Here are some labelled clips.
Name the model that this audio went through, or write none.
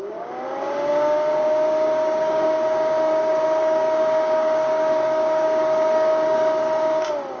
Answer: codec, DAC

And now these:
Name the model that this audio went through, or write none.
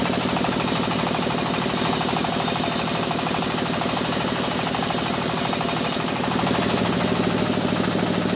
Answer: none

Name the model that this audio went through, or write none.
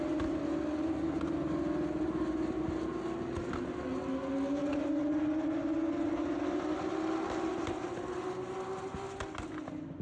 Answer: none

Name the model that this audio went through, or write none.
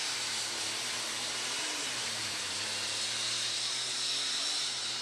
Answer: vocoder, BigVGAN v2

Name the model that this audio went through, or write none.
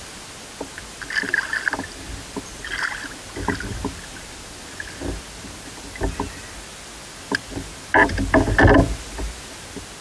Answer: none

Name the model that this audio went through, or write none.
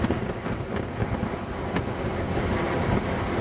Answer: none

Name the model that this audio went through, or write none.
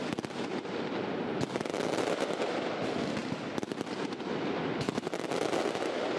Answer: none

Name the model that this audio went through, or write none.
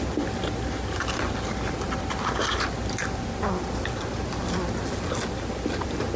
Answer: none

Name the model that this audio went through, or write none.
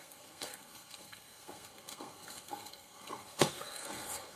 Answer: codec, SNAC